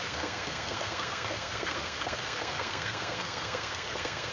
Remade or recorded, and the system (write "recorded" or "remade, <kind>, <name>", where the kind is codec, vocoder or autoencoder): remade, codec, SNAC